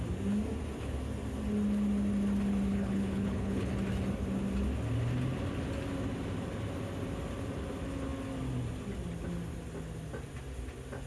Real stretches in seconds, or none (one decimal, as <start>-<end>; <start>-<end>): 0.0-2.7; 3.7-11.1